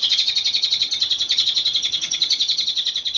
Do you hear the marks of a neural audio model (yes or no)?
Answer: yes